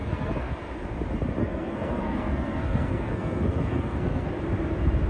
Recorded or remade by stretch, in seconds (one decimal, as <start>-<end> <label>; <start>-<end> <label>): 0.0-0.5 remade; 0.5-1.4 recorded; 1.4-4.3 remade; 4.3-5.1 recorded